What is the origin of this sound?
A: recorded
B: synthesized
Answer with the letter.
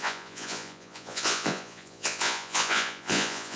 B